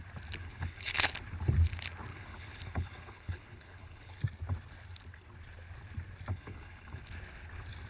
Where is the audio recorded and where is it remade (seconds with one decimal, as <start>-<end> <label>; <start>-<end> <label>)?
0.0-0.4 recorded; 0.4-1.1 remade; 1.1-2.1 recorded; 2.1-4.2 remade; 4.2-6.3 recorded; 6.3-7.0 remade; 7.0-7.9 recorded